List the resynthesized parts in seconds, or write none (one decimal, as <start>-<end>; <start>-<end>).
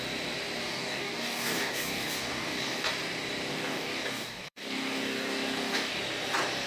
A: 0.6-2.9; 3.5-6.0